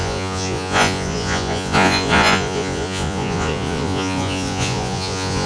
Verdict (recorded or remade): remade